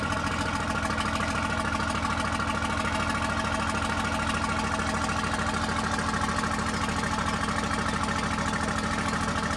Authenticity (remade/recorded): recorded